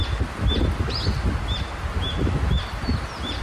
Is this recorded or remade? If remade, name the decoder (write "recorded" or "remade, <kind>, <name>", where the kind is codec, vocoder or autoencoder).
recorded